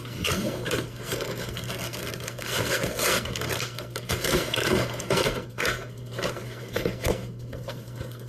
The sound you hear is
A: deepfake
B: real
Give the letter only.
A